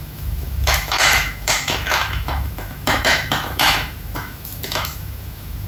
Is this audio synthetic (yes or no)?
yes